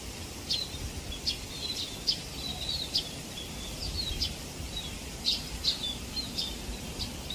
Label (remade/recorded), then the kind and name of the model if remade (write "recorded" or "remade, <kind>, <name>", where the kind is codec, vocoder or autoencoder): remade, vocoder, BigVGAN v2